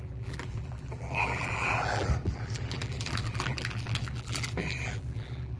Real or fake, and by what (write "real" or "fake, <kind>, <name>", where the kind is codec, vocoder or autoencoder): fake, vocoder, BigVGAN v2